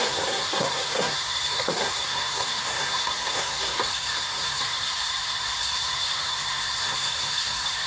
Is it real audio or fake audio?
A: fake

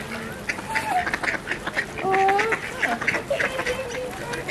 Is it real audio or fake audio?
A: real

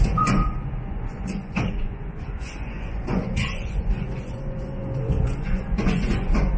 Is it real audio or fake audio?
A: fake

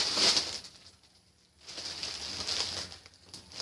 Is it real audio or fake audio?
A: real